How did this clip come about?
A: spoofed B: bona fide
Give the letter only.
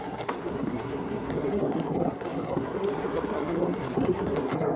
A